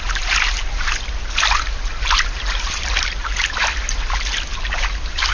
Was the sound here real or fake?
real